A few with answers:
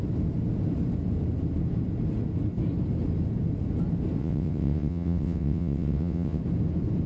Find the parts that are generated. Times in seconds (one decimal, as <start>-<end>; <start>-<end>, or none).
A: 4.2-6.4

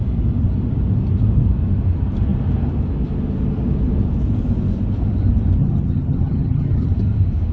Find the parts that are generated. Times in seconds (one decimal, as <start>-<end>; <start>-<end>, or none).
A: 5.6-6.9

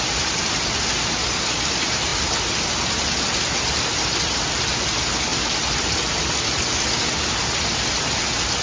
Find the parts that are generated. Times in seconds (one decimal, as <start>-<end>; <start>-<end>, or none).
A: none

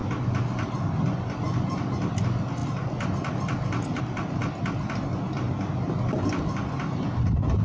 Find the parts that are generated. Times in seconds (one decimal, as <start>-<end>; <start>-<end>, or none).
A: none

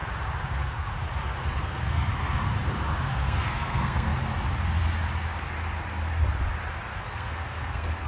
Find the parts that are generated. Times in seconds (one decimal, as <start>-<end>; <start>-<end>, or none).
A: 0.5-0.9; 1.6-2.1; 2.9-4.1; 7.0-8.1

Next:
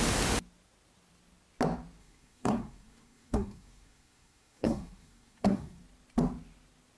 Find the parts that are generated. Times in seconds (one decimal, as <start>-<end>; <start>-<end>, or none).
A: 2.0-5.8

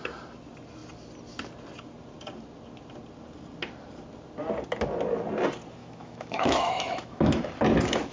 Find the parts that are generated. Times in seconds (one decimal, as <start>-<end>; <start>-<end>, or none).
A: 5.8-7.4